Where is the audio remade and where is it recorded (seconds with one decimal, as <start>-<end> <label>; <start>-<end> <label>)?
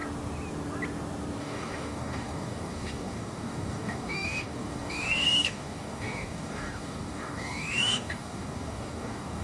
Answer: 0.0-1.4 recorded; 1.4-9.4 remade